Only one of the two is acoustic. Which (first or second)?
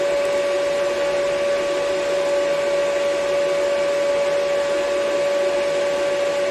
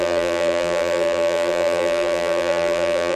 first